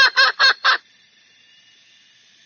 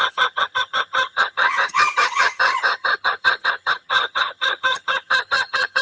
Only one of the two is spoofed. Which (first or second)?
second